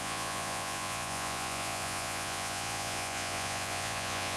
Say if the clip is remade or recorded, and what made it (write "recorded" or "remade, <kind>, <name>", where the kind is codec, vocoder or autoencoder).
remade, vocoder, Vocos